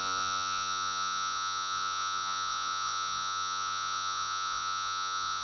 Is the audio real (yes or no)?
no